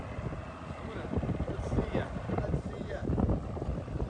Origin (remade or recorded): recorded